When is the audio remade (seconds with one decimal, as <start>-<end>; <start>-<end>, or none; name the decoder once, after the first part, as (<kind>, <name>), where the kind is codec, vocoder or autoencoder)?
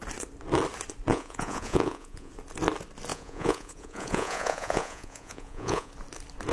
1.1-2.3 (vocoder, Vocos); 3.1-5.9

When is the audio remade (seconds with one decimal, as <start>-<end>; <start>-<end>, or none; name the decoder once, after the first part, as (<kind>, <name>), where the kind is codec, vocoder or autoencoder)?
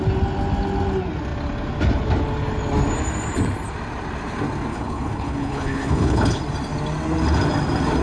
4.7-6.4 (codec, HILCodec)